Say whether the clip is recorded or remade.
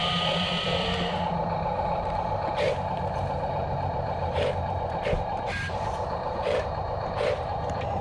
remade